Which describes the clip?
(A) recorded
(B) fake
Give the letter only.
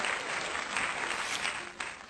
A